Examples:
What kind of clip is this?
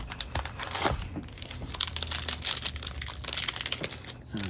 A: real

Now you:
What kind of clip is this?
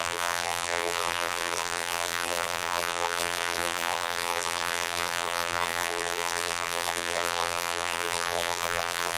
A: fake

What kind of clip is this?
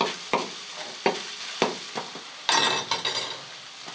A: real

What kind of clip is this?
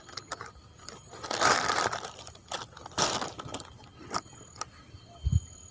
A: real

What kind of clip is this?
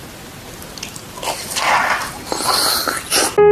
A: real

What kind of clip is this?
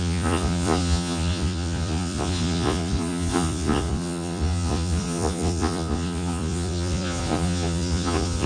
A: fake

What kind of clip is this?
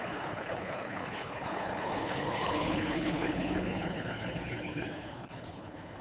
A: fake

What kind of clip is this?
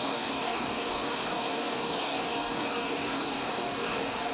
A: fake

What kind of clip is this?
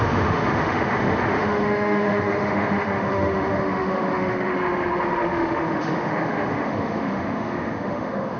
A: fake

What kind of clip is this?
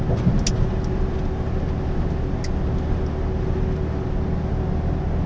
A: real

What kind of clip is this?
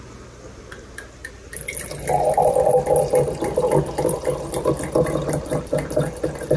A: real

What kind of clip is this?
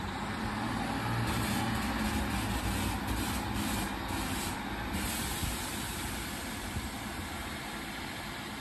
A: real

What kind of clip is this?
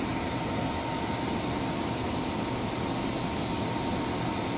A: real